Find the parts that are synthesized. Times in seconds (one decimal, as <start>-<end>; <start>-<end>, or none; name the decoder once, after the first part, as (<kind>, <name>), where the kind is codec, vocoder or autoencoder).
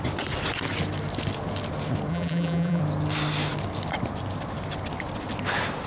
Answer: 2.1-2.8 (vocoder, BigVGAN v2)